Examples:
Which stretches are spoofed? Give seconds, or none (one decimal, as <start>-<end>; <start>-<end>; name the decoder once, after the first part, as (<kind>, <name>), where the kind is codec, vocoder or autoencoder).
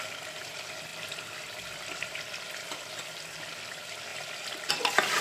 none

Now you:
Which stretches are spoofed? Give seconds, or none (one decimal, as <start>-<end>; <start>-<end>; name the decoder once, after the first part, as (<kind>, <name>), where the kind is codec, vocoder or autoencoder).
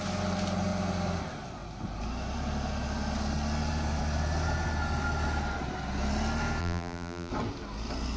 6.6-7.3 (vocoder, BigVGAN v2)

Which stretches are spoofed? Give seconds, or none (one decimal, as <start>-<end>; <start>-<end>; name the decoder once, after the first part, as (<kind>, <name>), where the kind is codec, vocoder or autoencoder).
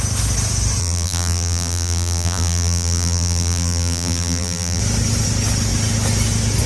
0.8-4.8 (vocoder, BigVGAN v2)